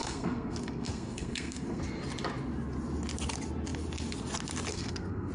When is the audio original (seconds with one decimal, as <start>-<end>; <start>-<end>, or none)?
1.8-4.7